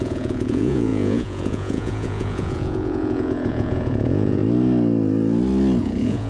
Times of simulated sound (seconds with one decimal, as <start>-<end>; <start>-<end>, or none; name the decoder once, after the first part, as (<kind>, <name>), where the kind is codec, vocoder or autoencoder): 0.0-4.4 (vocoder, Vocos); 5.8-6.3